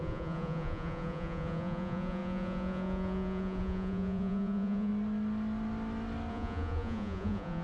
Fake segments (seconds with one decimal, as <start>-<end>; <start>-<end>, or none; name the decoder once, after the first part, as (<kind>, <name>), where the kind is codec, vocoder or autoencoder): 0.0-4.9 (vocoder, Vocos); 6.3-7.6